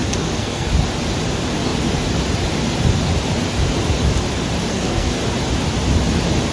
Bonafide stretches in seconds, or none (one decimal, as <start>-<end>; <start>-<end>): 0.7-4.7; 5.2-6.5